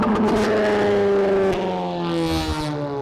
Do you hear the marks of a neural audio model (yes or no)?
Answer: no